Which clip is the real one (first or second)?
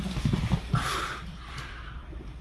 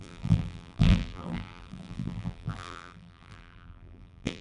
first